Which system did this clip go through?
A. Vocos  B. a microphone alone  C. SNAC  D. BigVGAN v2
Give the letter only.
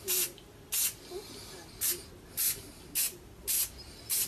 B